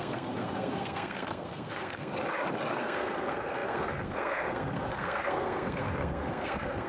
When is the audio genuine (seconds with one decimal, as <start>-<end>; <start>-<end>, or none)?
2.1-2.7